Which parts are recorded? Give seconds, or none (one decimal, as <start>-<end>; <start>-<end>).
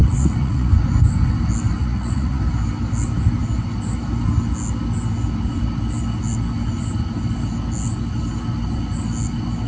0.7-1.8; 2.4-9.7